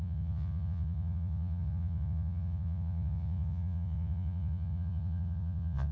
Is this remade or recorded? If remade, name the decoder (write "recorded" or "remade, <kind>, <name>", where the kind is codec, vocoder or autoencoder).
remade, vocoder, Vocos